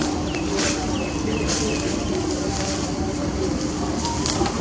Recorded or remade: recorded